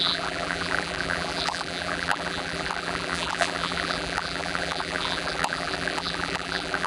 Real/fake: fake